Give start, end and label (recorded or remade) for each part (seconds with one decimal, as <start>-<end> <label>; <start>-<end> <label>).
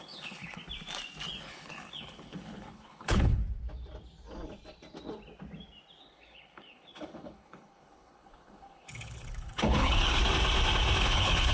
0.0-0.6 remade; 0.6-1.4 recorded; 1.4-3.4 remade; 3.4-6.0 recorded; 6.0-10.2 remade; 10.2-11.0 recorded; 11.0-11.5 remade